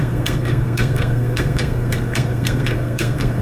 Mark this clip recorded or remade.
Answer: remade